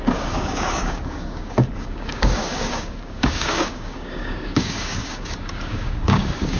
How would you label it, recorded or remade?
remade